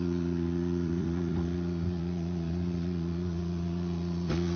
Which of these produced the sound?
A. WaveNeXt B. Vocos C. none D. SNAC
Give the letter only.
B